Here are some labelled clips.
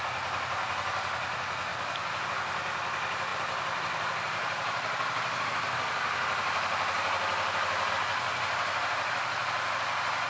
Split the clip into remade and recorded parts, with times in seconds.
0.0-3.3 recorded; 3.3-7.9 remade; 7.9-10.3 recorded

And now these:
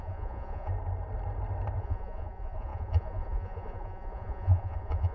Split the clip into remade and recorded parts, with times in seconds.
0.0-0.7 remade; 0.7-1.8 recorded; 1.8-5.1 remade

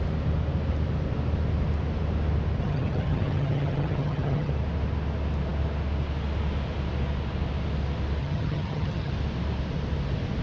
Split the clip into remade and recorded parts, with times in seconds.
0.0-2.6 recorded; 2.6-4.5 remade; 4.5-8.2 recorded; 8.2-9.1 remade; 9.1-10.4 recorded

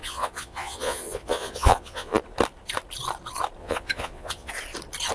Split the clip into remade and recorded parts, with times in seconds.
0.0-2.2 remade; 2.2-3.6 recorded; 3.6-4.5 remade; 4.5-5.1 recorded